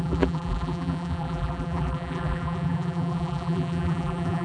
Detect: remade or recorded remade